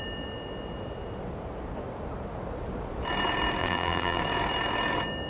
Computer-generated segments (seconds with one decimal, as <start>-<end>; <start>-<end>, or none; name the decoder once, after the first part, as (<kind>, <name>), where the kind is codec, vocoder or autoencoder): 3.6-4.2 (vocoder, BigVGAN v2)